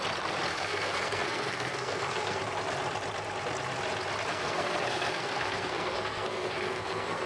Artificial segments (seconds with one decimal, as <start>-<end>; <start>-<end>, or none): 0.5-2.4; 4.3-7.3